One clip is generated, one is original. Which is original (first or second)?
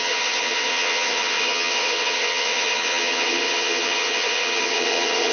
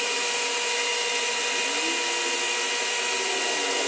second